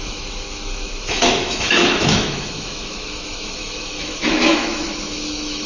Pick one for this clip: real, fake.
fake